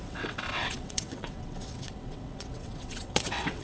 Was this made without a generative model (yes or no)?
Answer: no